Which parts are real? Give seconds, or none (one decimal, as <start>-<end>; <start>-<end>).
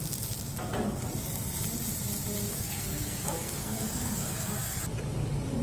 0.0-2.5; 4.8-5.6